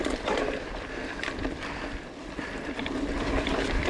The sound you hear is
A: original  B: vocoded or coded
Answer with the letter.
B